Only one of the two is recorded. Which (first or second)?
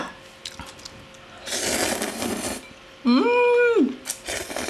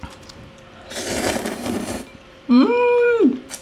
first